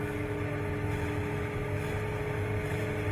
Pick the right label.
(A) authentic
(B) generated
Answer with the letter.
A